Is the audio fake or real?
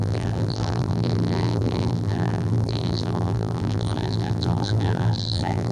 fake